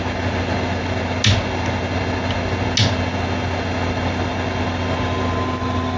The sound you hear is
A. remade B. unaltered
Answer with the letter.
B